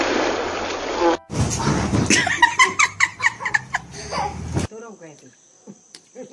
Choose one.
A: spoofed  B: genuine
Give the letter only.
B